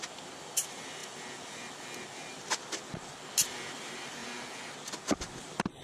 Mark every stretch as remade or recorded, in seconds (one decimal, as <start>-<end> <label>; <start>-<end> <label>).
0.0-5.8 recorded